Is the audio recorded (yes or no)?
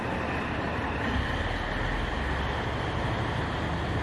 yes